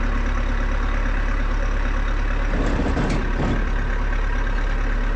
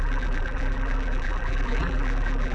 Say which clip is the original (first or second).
first